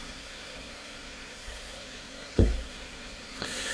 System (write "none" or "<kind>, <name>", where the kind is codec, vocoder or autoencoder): codec, SNAC